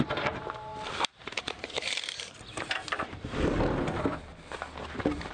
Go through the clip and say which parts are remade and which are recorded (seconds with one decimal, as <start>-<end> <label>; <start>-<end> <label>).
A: 0.0-4.3 remade; 4.3-4.8 recorded; 4.8-5.3 remade